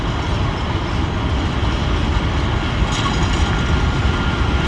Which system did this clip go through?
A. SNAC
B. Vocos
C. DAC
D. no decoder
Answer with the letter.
D